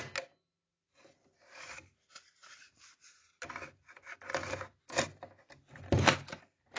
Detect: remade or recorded recorded